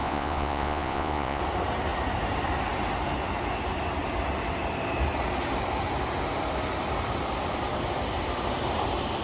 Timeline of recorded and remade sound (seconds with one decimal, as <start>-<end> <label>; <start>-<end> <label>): 0.0-1.4 remade; 1.4-9.2 recorded